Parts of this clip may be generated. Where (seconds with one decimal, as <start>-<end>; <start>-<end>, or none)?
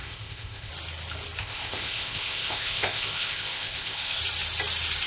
0.0-0.7; 1.4-4.2